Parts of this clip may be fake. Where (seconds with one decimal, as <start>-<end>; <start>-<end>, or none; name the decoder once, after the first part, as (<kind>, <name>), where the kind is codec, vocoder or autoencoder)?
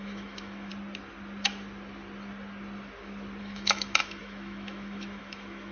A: 0.0-0.7 (autoencoder, DAC-VAE); 3.4-5.7